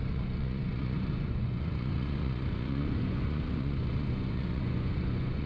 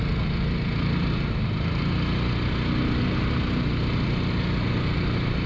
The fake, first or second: first